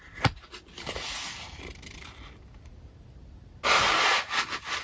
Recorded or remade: recorded